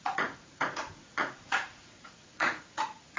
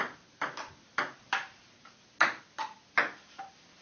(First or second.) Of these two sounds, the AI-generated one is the first